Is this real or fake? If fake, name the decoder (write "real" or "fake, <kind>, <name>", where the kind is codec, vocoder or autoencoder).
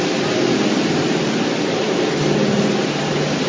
real